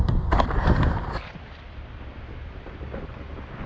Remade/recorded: remade